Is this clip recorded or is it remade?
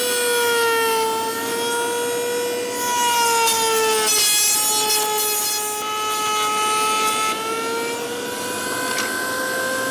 recorded